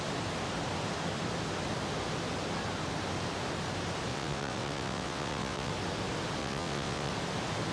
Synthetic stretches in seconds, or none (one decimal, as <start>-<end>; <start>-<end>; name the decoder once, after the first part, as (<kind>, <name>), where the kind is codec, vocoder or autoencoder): 4.1-5.7 (vocoder, WaveNeXt); 6.4-7.1